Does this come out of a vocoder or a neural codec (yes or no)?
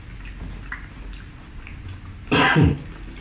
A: no